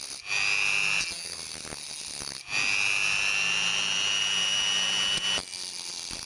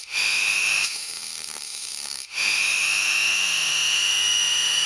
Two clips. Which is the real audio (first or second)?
first